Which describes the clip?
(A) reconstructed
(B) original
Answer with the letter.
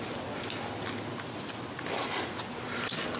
B